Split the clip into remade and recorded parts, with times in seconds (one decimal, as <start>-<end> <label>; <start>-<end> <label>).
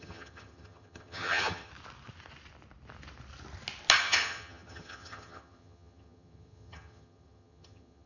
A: 0.0-1.7 remade; 1.7-4.0 recorded; 4.0-8.1 remade